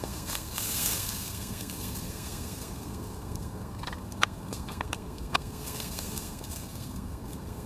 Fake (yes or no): yes